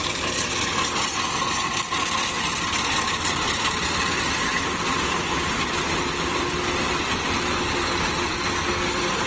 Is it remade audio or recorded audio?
recorded